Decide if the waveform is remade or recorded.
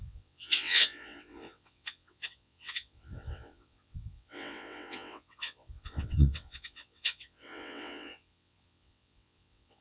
remade